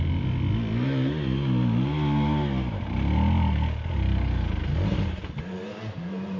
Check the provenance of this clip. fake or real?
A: real